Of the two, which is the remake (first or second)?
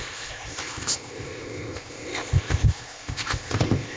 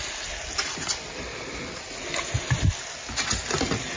first